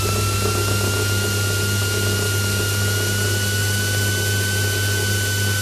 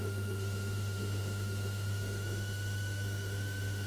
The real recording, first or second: first